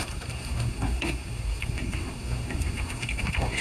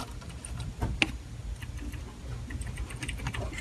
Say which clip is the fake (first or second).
first